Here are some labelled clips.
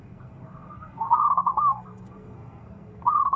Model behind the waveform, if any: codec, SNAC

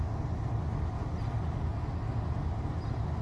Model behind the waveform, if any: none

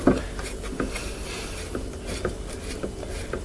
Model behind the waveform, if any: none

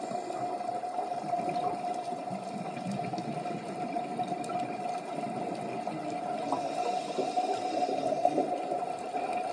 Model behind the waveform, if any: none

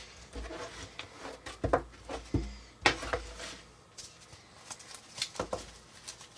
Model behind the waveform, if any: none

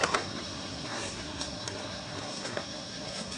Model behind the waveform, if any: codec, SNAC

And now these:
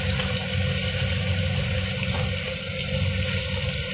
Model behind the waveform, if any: none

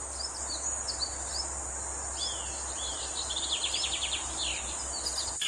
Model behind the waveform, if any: none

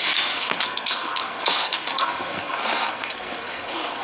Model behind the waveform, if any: codec, SNAC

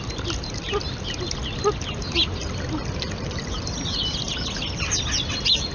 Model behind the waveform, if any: none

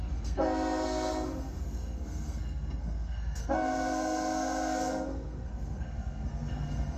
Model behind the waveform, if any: codec, SNAC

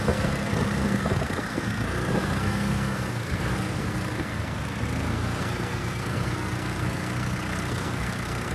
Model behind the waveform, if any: codec, SNAC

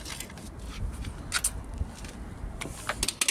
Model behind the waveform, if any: none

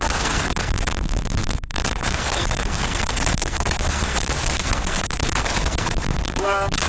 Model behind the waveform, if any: codec, SNAC